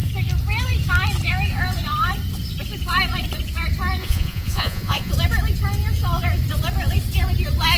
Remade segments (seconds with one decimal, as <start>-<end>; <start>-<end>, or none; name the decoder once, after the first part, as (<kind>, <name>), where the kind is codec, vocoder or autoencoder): 4.0-5.1 (vocoder, Vocos)